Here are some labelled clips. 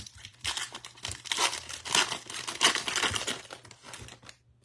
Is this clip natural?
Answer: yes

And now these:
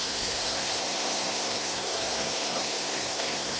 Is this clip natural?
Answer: no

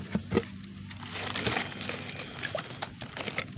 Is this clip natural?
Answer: yes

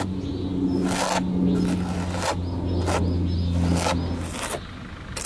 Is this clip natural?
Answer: yes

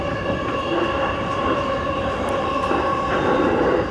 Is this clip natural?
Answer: yes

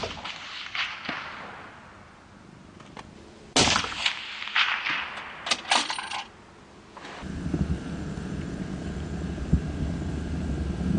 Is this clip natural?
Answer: yes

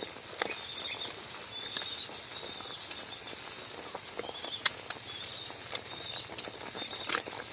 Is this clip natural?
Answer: yes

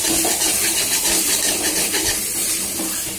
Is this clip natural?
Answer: yes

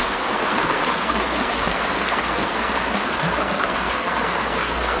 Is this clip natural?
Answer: no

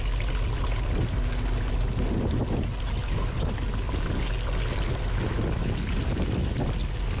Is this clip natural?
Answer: yes